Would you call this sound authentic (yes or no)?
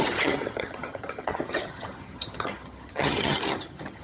no